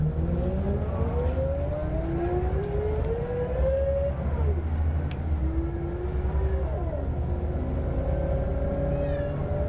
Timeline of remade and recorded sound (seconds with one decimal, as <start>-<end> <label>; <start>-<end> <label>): 0.0-9.7 recorded